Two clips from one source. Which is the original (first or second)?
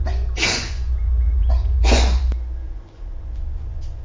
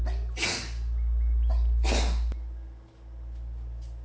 second